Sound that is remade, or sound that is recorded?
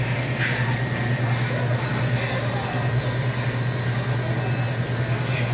recorded